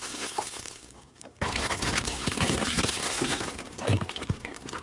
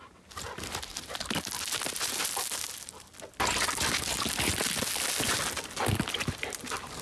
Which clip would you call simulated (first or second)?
first